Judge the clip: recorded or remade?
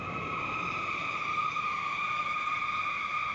recorded